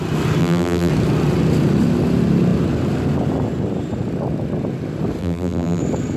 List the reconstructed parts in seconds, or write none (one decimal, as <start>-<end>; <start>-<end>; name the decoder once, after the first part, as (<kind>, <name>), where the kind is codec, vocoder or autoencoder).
0.4-0.9 (vocoder, BigVGAN v2); 5.2-5.8